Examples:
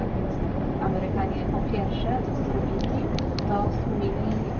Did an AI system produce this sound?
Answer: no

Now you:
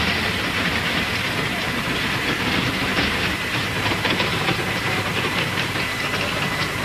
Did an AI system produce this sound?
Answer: yes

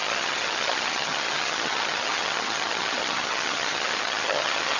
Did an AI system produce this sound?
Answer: yes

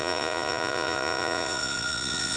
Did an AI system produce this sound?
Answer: yes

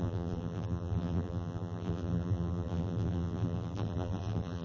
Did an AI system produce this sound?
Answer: yes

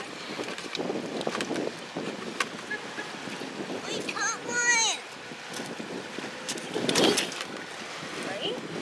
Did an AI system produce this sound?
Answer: no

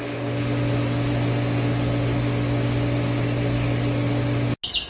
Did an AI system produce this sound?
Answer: no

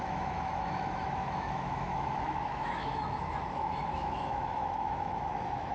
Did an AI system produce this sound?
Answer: yes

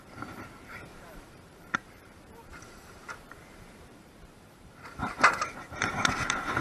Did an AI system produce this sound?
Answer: yes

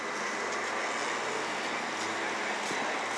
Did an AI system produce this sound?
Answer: no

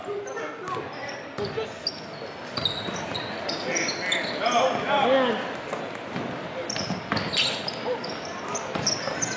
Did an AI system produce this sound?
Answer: no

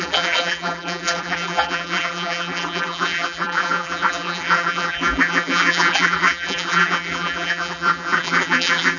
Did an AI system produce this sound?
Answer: yes